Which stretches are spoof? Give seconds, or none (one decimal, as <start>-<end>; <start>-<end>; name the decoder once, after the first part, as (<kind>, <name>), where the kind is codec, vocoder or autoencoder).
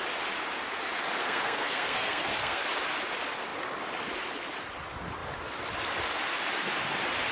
1.2-2.6 (codec, SNAC)